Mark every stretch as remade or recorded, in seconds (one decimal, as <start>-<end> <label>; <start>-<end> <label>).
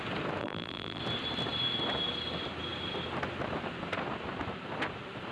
0.0-0.4 recorded; 0.4-1.0 remade; 1.0-5.3 recorded